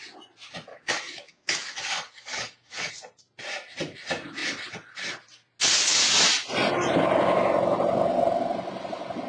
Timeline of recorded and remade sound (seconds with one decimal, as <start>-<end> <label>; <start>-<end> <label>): 0.0-0.7 recorded; 0.7-2.9 remade; 2.9-9.3 recorded